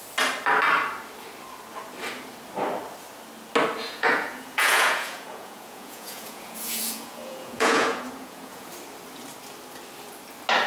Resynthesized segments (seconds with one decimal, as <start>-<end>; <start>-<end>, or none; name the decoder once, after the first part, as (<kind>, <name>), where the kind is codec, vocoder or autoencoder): 3.8-8.7 (vocoder, Vocos)